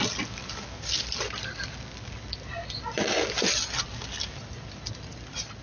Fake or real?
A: real